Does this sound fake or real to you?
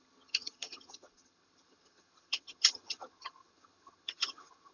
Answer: fake